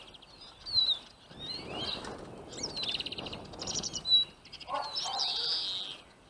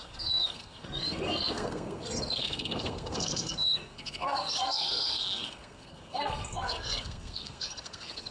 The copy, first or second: second